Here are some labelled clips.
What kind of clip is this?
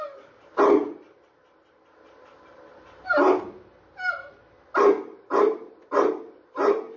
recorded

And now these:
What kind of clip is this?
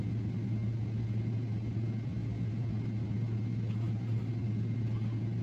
recorded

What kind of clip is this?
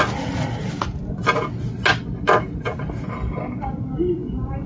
recorded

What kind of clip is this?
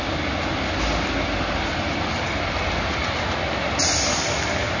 recorded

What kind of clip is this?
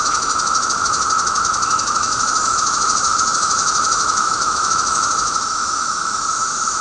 remade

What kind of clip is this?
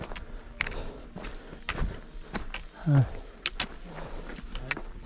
recorded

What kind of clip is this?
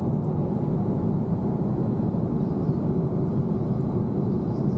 recorded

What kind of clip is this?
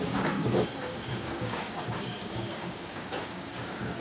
remade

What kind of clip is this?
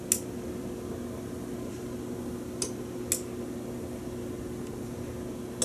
recorded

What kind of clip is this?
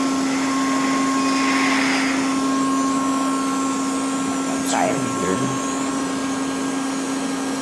recorded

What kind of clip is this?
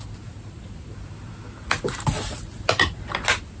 recorded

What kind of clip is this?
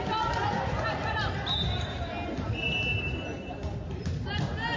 recorded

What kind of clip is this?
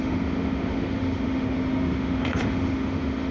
remade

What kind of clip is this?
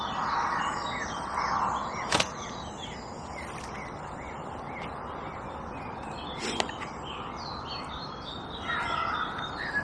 recorded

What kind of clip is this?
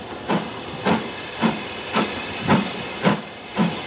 remade